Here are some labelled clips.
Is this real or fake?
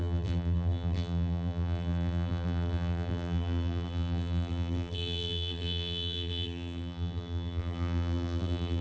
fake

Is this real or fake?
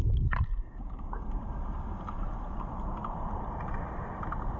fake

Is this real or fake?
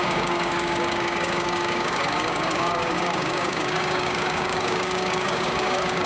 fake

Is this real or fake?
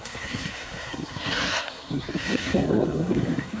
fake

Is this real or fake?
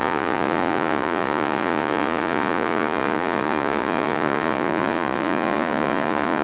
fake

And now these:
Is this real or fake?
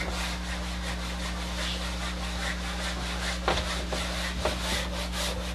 real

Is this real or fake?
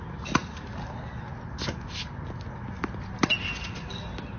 real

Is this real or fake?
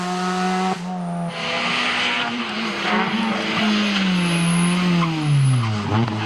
real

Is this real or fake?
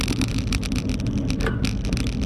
real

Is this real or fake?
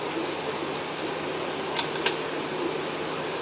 real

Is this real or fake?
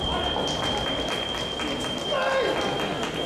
real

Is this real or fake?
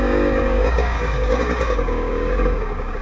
fake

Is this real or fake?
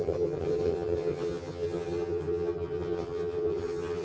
fake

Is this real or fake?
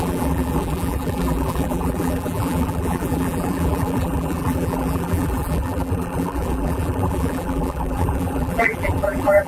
fake